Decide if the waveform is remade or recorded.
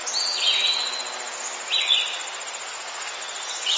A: recorded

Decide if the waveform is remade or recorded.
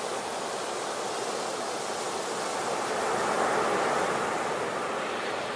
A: recorded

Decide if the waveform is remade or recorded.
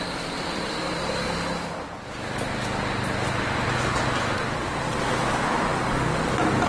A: recorded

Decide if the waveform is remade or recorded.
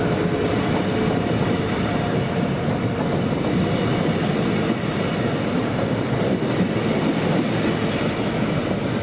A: recorded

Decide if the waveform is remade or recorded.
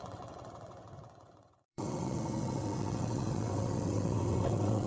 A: remade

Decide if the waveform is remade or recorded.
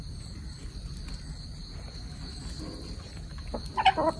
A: recorded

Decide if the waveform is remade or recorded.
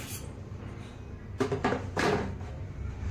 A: recorded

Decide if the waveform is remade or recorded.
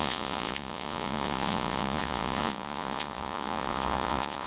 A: remade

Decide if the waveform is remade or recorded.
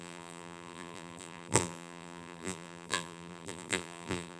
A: remade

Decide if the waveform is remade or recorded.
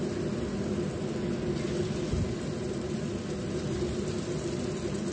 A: recorded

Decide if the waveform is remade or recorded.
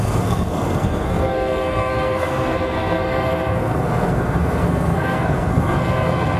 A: remade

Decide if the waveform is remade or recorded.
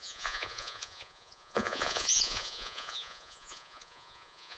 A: remade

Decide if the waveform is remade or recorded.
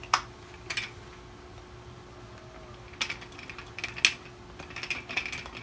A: recorded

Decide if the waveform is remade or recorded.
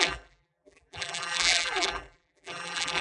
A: remade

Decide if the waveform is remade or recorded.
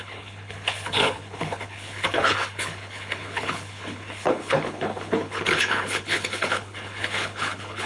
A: remade